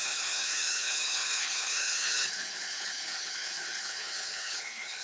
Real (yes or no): no